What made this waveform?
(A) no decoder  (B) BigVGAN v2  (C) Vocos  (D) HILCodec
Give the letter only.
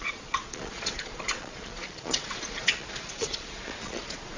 C